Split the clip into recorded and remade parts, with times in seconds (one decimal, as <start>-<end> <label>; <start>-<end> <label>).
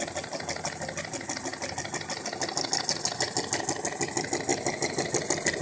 0.0-5.6 recorded